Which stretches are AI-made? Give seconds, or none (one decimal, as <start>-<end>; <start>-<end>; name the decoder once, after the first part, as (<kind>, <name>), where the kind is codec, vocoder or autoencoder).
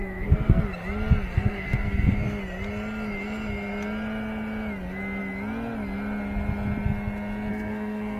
0.0-0.6 (codec, SNAC); 1.3-2.4; 7.5-8.2